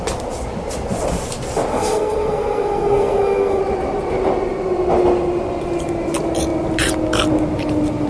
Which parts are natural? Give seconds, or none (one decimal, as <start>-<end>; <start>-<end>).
0.0-1.7; 3.6-8.1